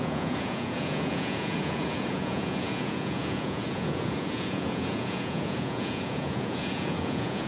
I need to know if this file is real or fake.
fake